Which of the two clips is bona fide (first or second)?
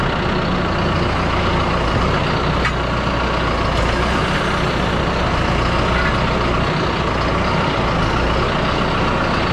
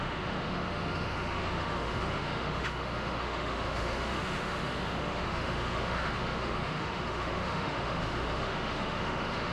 first